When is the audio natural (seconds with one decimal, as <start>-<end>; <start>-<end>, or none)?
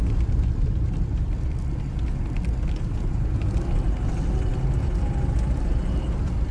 0.0-6.5